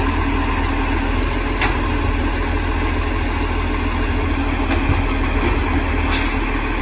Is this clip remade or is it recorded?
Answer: recorded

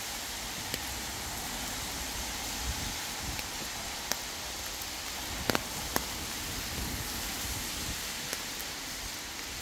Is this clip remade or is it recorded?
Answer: recorded